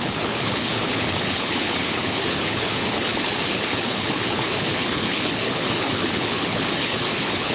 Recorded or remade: remade